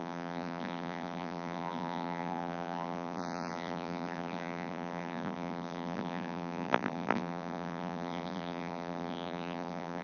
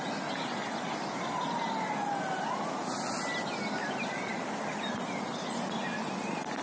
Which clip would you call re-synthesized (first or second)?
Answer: first